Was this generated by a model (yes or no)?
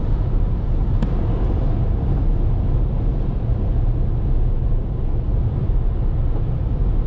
no